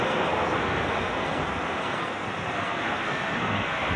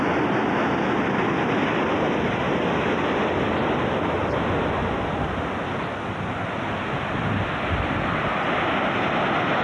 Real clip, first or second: second